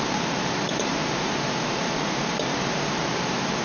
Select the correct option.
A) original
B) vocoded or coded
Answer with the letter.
B